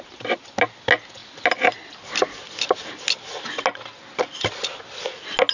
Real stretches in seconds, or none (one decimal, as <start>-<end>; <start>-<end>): 0.0-5.5